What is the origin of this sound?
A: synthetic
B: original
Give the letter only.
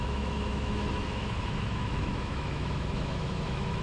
A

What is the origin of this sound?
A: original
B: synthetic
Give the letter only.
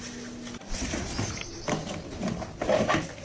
A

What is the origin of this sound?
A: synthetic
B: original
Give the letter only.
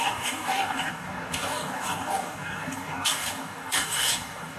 A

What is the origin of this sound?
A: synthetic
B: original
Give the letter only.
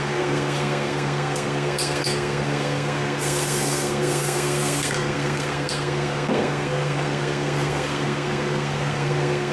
A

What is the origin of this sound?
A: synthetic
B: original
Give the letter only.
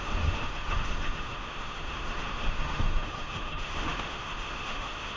A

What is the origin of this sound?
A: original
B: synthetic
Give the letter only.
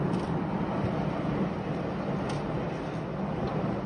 A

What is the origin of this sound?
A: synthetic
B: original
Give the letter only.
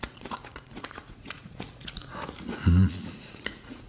A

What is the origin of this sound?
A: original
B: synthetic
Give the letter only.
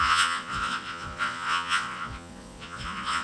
B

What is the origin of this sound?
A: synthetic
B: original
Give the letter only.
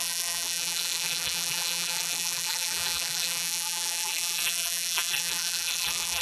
A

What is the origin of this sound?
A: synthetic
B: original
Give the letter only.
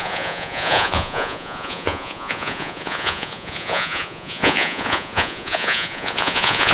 A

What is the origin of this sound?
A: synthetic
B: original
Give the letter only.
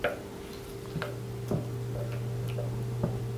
B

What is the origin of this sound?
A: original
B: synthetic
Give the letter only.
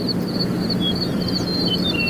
A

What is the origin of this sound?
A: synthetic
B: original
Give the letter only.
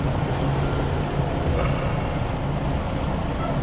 B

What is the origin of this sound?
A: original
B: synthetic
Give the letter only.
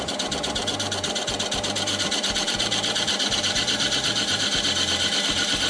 B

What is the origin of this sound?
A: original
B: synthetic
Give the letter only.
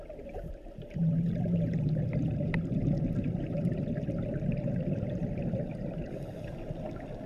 A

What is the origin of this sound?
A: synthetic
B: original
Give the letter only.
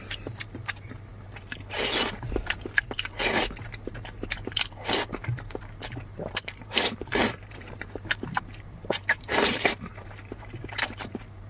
A